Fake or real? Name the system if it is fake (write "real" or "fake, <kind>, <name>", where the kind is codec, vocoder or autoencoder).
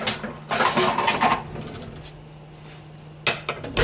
real